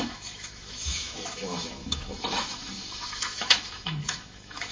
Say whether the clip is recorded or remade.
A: remade